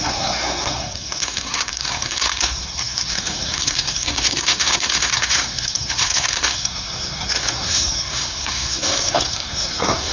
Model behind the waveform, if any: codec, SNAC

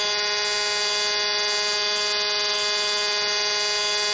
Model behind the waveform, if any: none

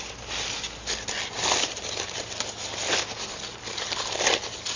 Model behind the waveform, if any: none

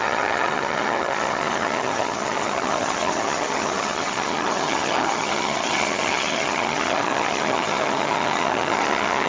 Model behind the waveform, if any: vocoder, HiFi-GAN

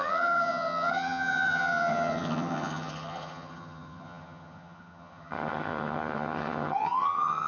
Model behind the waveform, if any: vocoder, HiFi-GAN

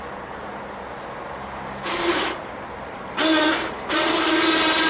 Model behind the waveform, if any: none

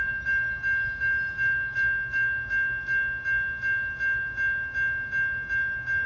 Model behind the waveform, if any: none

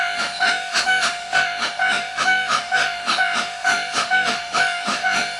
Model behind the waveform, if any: autoencoder, DAC-VAE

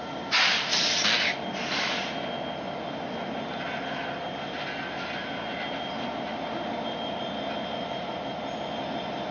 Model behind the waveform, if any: none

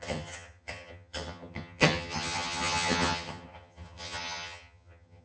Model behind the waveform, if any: vocoder, HiFi-GAN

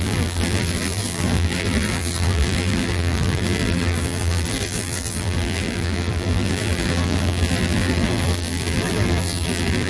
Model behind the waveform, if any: vocoder, BigVGAN v2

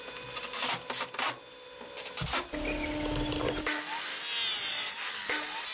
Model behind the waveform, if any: none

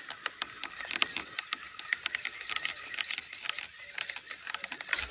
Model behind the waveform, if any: none